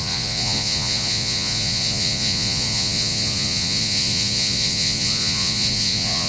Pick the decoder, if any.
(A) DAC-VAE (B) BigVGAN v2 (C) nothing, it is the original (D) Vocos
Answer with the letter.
D